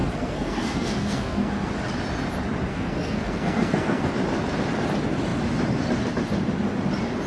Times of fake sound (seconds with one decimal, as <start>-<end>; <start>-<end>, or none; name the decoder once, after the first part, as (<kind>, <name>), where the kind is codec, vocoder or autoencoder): 0.0-1.7 (codec, SNAC); 2.7-4.1